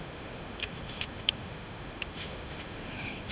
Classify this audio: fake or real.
fake